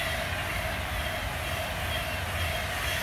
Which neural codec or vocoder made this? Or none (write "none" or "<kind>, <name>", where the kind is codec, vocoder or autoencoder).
none